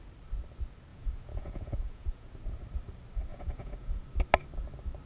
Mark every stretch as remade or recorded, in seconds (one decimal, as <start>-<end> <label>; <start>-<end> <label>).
0.0-0.9 recorded; 0.9-2.3 remade; 2.3-3.3 recorded; 3.3-4.0 remade; 4.0-5.1 recorded